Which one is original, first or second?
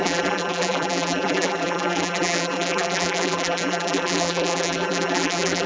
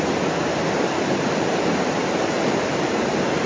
second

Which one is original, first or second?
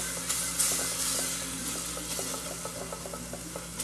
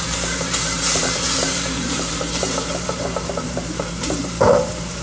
first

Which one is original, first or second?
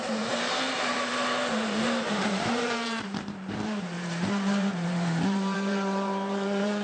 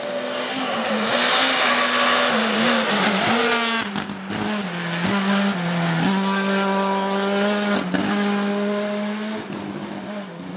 second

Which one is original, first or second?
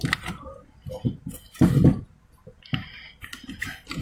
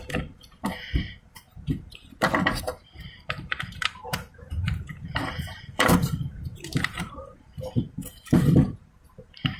first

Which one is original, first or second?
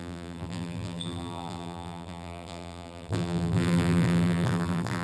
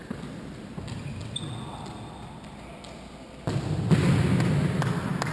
second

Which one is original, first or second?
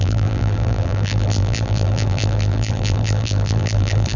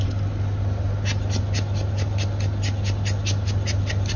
second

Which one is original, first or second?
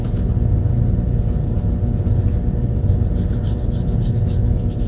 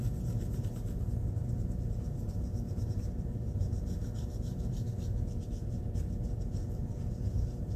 first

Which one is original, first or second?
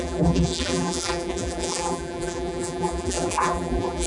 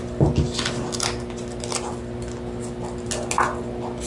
second